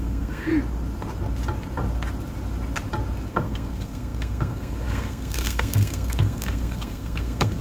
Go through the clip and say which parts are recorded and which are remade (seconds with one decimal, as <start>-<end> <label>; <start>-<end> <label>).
0.0-0.5 remade; 0.5-3.3 recorded; 3.3-7.6 remade